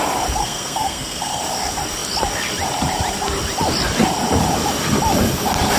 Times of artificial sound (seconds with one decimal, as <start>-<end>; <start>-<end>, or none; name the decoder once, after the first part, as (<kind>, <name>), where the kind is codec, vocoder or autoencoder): 0.4-1.4 (codec, SNAC)